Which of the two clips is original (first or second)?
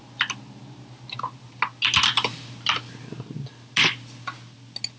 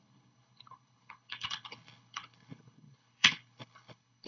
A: first